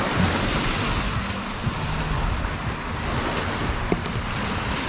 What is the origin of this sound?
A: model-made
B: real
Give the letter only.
B